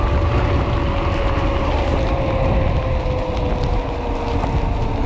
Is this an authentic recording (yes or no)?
yes